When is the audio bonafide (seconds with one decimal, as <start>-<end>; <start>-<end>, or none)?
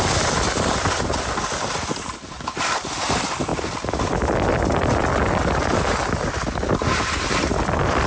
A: 0.0-8.1